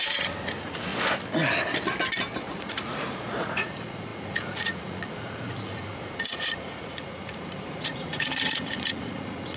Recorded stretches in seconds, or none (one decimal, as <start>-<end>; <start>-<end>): 0.9-2.4